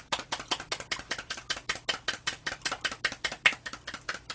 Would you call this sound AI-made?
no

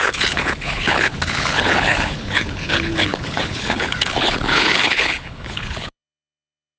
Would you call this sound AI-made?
yes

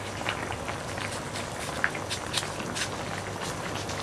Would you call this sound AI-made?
no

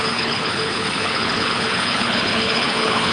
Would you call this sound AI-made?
yes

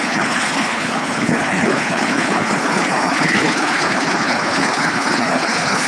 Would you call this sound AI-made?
yes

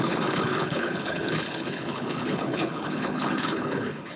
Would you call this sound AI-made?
yes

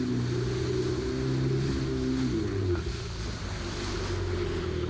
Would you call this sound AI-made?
no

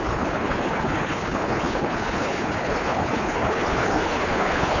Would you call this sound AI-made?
yes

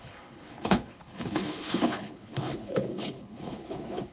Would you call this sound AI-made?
yes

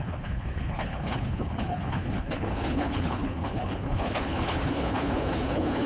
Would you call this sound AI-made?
yes